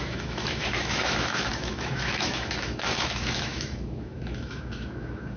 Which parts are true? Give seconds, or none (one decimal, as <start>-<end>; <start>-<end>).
none